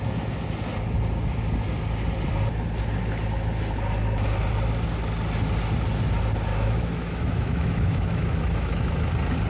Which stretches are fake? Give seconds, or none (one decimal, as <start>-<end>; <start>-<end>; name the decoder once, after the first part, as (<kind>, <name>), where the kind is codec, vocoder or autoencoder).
6.5-9.1 (autoencoder, DAC-VAE)